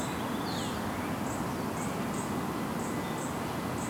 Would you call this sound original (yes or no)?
yes